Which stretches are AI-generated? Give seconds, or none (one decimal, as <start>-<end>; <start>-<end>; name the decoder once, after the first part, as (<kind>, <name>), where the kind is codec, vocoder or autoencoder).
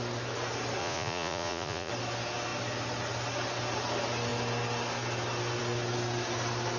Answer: 0.8-1.9 (vocoder, Vocos)